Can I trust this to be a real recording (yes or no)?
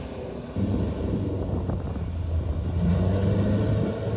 yes